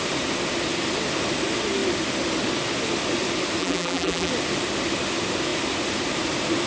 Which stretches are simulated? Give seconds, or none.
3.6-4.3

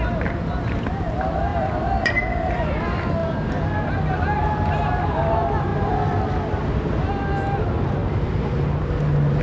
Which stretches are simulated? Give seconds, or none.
1.5-2.1; 5.7-7.1; 8.0-9.4